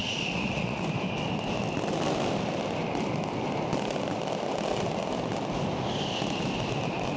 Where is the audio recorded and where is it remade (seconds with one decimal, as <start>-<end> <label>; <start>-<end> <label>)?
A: 0.0-0.8 remade; 0.8-7.2 recorded